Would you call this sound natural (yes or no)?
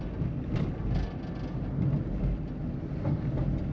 yes